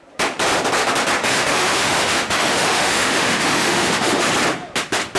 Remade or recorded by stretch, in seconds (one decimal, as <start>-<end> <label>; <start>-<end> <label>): 0.0-1.2 recorded; 1.2-4.3 remade; 4.3-5.2 recorded